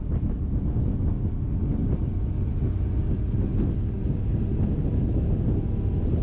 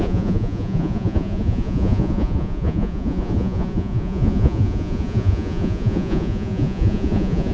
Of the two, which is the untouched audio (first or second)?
first